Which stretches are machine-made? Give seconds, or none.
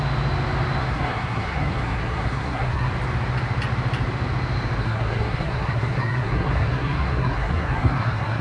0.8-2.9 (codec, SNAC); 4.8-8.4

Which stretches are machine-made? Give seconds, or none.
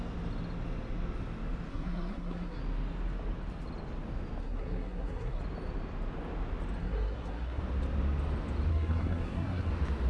1.7-2.6 (codec, SNAC); 4.4-5.4; 6.8-7.6; 8.7-9.7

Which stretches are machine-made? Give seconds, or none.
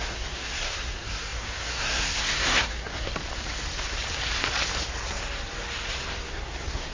0.0-3.1 (codec, SNAC); 6.3-6.9